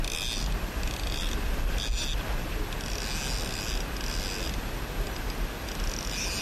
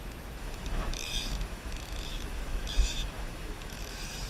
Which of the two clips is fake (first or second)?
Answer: second